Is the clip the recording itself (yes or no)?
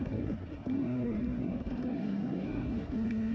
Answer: no